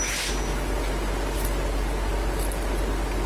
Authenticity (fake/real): real